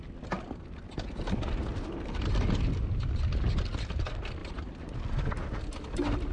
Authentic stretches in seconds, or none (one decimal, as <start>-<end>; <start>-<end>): 0.0-4.4; 5.1-6.3